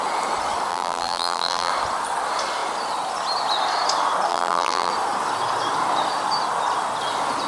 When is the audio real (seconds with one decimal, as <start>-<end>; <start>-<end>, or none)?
0.0-0.7; 1.7-4.3; 4.9-7.5